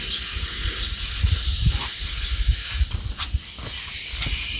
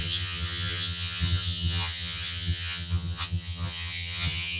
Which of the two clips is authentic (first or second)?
first